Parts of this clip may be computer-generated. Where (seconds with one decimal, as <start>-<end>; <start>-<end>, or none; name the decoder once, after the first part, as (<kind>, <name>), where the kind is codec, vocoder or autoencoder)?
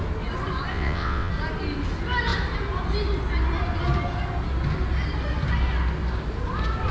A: 0.7-1.3 (vocoder, WaveNeXt)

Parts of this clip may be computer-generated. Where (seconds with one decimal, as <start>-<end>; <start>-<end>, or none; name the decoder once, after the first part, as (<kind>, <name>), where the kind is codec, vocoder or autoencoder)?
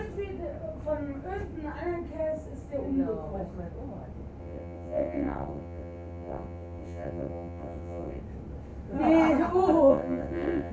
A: 4.4-8.2 (vocoder, WaveNeXt); 9.9-10.7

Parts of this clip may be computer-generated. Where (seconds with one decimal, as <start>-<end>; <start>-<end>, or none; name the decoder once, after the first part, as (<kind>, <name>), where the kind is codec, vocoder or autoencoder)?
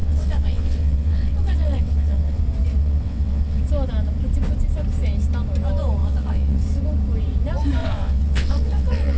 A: 0.0-2.4 (vocoder, WaveNeXt); 2.8-3.6; 6.0-6.6; 7.8-9.2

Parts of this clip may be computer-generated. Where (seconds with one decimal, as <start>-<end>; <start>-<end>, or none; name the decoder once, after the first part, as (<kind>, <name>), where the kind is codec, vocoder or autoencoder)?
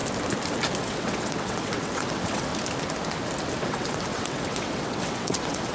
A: 0.8-2.5 (vocoder, WaveNeXt); 3.6-5.7